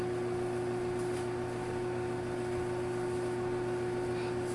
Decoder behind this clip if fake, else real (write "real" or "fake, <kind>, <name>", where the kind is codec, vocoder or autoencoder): real